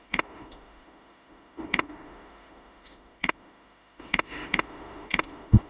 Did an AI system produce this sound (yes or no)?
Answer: yes